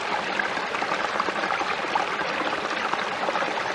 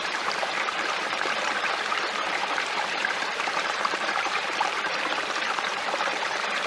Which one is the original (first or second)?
first